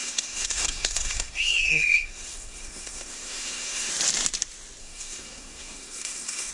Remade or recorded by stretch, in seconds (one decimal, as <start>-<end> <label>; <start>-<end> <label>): 0.0-3.9 remade; 3.9-4.8 recorded; 4.8-6.5 remade